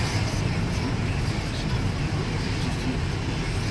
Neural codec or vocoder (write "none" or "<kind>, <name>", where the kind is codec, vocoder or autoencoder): none